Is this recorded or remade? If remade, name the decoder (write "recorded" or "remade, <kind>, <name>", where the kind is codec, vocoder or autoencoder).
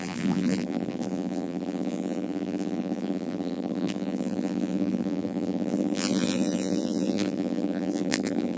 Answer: remade, vocoder, BigVGAN v2